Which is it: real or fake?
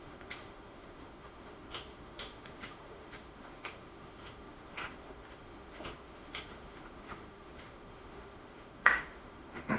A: fake